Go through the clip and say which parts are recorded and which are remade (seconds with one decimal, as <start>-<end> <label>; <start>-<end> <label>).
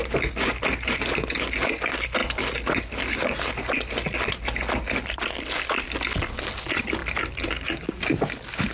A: 0.0-8.7 recorded